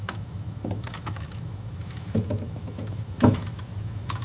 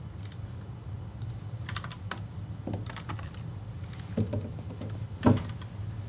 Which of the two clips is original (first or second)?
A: second